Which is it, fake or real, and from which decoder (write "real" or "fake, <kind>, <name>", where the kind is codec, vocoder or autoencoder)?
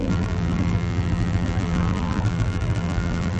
fake, vocoder, BigVGAN v2